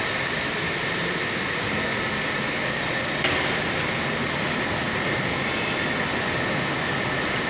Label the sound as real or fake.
real